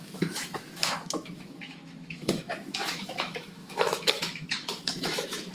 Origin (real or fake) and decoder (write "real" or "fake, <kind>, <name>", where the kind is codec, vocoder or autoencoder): fake, autoencoder, DAC-VAE